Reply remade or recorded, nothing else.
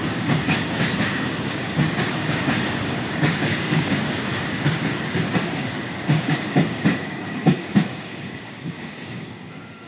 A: remade